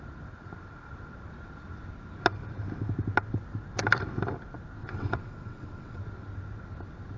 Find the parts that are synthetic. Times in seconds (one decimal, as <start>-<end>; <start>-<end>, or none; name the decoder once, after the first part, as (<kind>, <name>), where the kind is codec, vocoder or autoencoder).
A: 4.8-6.0 (vocoder, WaveNeXt)